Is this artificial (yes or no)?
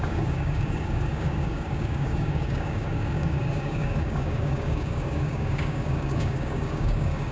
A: yes